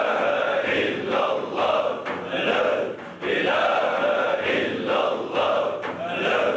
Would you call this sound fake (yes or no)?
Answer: no